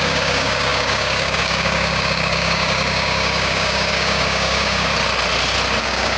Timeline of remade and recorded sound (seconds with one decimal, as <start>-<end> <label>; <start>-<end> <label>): 0.0-4.9 remade; 4.9-5.8 recorded; 5.8-6.2 remade